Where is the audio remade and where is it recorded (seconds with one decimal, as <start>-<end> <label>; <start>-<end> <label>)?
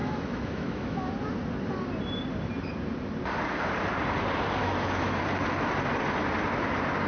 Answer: 0.0-1.1 remade; 1.1-4.6 recorded; 4.6-5.2 remade; 5.2-7.1 recorded